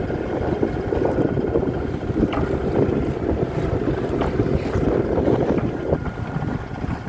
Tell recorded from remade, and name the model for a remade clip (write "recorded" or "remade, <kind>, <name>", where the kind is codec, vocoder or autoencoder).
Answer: recorded